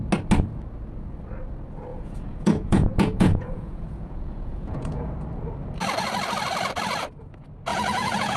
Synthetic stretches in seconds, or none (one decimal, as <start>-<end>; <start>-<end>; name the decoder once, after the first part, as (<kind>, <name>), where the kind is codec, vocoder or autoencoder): 1.9-5.1 (vocoder, Vocos); 7.7-8.4